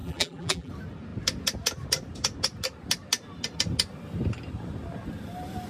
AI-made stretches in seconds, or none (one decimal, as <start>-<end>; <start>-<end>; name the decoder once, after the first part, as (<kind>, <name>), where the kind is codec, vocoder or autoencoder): 0.0-0.7 (vocoder, BigVGAN v2)